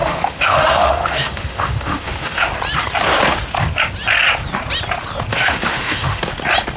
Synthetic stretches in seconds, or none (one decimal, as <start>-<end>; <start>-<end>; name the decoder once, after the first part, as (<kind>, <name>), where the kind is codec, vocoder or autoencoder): 0.0-2.5 (autoencoder, DAC-VAE); 5.3-6.2